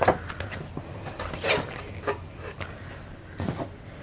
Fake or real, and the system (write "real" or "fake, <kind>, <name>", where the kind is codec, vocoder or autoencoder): real